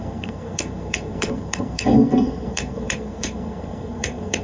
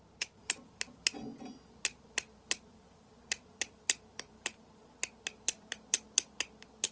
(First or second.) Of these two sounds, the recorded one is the second